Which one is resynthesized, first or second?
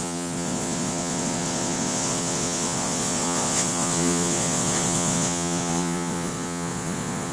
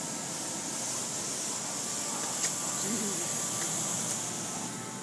first